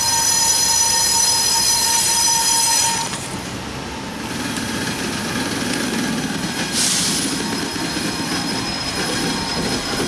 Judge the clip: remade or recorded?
recorded